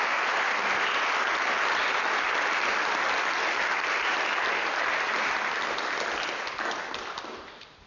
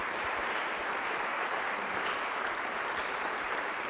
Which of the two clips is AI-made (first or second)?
second